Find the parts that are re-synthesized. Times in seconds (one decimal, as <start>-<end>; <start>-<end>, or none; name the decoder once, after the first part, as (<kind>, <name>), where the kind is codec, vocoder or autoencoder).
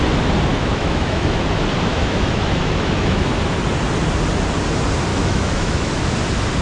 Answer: 0.5-1.4 (autoencoder, DAC-VAE); 1.9-3.3; 5.1-5.9